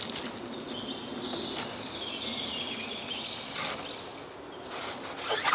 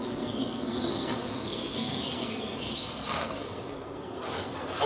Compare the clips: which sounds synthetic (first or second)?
second